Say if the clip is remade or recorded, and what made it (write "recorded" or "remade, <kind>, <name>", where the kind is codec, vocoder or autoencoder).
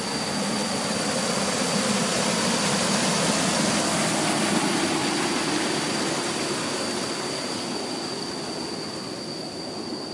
recorded